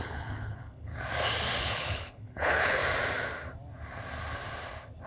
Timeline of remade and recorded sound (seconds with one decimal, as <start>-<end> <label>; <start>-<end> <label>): 0.0-0.9 remade; 0.9-1.6 recorded; 1.6-2.8 remade; 2.8-5.1 recorded